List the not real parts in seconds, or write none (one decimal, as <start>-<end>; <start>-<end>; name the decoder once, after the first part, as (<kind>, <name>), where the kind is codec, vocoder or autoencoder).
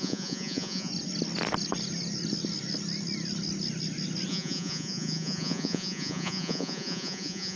0.0-0.9 (vocoder, Vocos); 4.3-7.6